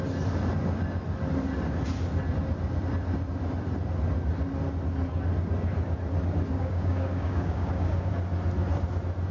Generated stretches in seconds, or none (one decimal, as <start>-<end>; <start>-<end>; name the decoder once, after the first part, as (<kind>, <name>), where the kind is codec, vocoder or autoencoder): 6.5-8.1 (codec, DAC)

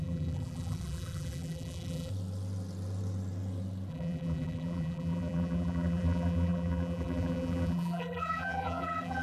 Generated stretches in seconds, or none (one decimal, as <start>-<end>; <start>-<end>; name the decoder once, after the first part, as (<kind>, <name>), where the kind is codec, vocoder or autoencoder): 0.0-2.1 (vocoder, BigVGAN v2); 3.9-9.2

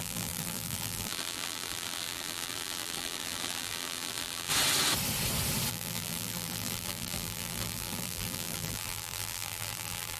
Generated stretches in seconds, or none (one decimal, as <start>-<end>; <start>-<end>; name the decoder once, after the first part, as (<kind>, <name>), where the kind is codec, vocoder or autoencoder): 0.0-4.5 (vocoder, BigVGAN v2); 5.7-10.2

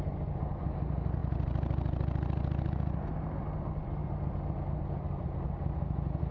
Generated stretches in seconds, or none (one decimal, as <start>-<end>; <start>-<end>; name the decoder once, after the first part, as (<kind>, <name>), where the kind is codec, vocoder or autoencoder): none

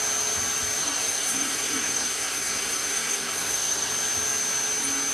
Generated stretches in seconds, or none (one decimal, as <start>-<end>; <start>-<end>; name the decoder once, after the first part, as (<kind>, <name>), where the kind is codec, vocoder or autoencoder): 0.8-3.9 (codec, SNAC)

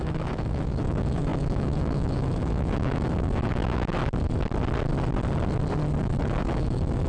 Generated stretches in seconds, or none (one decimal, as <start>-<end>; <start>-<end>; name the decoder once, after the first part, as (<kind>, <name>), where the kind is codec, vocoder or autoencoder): 0.0-4.0 (autoencoder, DAC-VAE); 6.0-7.1

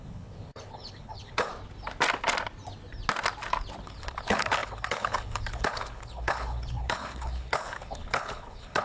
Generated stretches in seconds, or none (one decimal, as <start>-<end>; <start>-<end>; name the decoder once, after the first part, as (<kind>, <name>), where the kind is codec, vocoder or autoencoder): 0.0-1.5 (codec, HILCodec); 3.8-8.8

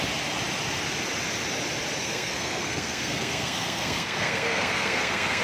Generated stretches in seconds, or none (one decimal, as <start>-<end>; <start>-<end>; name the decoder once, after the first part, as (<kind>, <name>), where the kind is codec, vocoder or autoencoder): 2.0-5.4 (codec, SNAC)